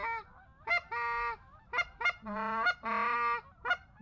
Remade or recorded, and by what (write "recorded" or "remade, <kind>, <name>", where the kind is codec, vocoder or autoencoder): recorded